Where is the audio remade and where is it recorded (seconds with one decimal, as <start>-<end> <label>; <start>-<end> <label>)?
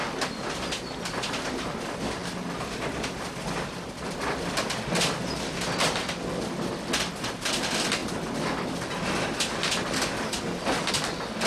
0.0-11.5 recorded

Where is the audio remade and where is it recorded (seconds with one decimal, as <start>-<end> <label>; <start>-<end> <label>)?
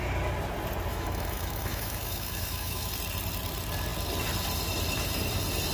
0.0-0.9 recorded; 0.9-2.9 remade; 2.9-5.7 recorded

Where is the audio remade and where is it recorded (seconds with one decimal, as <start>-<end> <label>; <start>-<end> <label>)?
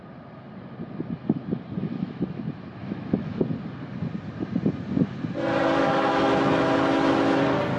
0.0-1.8 recorded; 1.8-2.4 remade; 2.4-2.8 recorded; 2.8-3.4 remade; 3.4-5.8 recorded; 5.8-7.1 remade; 7.1-7.8 recorded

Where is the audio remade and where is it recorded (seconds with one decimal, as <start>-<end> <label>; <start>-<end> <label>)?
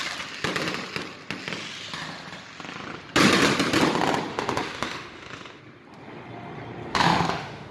0.0-4.3 recorded; 4.3-5.6 remade; 5.6-6.9 recorded; 6.9-7.7 remade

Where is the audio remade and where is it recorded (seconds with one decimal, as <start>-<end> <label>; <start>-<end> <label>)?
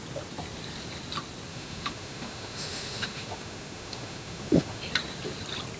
0.0-1.5 recorded; 1.5-4.8 remade; 4.8-5.8 recorded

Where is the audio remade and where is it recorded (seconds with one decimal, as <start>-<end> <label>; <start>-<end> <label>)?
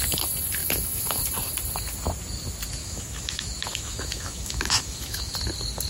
0.0-0.6 recorded; 0.6-1.2 remade; 1.2-2.8 recorded; 2.8-5.3 remade; 5.3-5.9 recorded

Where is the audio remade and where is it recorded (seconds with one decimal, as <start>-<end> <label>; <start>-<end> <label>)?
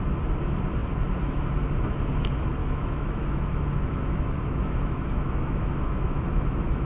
0.0-2.6 recorded; 2.6-6.9 remade